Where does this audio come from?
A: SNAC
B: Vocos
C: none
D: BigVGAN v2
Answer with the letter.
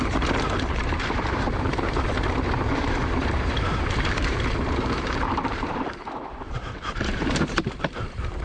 D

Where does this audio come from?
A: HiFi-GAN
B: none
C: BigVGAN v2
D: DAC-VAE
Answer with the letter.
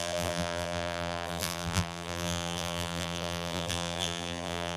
C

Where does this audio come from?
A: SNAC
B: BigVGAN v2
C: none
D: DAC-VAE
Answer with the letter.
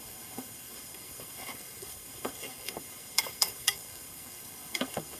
A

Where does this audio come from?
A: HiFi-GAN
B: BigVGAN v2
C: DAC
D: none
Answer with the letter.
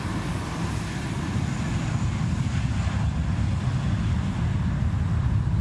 D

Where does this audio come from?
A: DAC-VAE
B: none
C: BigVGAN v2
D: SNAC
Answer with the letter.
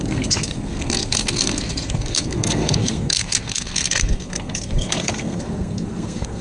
D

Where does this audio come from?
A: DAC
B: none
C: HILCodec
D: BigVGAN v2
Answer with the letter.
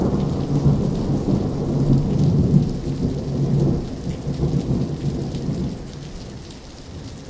B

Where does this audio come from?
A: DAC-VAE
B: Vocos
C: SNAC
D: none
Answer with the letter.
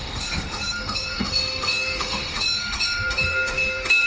A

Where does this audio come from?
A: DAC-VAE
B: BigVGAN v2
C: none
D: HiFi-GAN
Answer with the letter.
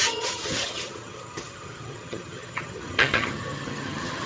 D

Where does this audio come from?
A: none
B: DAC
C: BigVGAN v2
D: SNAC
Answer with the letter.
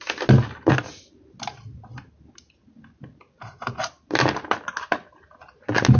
A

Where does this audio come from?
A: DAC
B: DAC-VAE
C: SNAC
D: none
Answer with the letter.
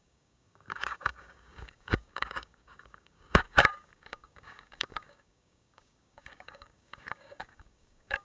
A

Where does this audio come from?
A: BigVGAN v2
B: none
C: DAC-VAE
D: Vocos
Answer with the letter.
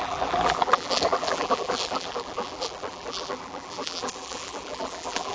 A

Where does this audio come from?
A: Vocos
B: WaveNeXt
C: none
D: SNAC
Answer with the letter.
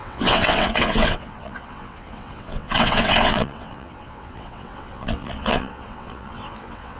B